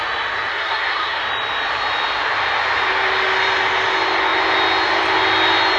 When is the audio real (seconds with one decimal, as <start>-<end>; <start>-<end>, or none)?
0.0-0.5; 1.2-5.8